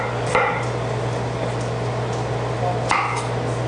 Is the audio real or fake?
real